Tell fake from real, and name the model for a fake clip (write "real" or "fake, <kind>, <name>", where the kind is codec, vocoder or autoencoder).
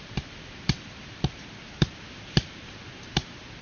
fake, vocoder, BigVGAN v2